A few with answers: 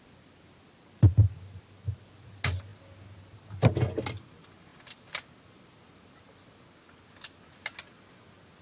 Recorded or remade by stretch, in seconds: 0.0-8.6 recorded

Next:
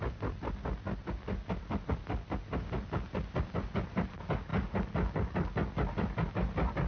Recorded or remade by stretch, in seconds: 0.0-6.9 recorded

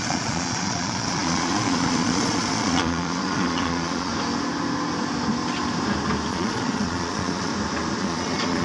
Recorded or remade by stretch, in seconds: 0.0-4.1 remade; 4.1-6.3 recorded; 6.3-7.5 remade; 7.5-8.0 recorded; 8.0-8.6 remade

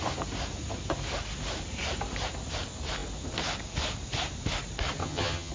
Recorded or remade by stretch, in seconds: 0.0-5.0 recorded; 5.0-5.5 remade